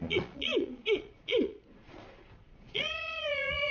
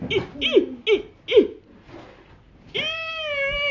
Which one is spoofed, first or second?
first